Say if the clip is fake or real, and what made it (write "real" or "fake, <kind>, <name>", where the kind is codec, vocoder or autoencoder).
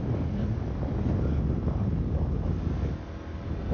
real